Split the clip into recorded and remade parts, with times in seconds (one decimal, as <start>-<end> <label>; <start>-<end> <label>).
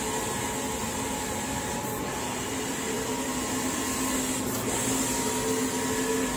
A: 0.0-0.8 recorded; 0.8-3.8 remade; 3.8-6.4 recorded